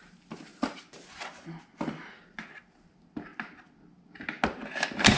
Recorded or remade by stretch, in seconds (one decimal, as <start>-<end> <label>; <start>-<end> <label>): 0.0-5.2 recorded